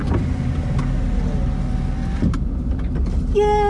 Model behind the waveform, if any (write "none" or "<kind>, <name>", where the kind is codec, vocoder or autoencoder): none